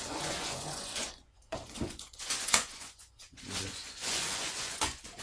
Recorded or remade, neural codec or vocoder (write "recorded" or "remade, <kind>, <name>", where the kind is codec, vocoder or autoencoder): remade, vocoder, Vocos